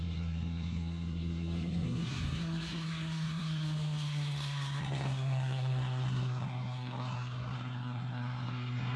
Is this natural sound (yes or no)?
no